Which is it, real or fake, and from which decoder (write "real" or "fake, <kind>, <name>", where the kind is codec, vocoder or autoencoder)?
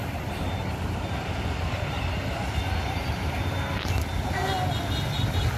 real